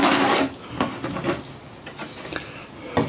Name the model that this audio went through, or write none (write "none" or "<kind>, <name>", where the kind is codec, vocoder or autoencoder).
none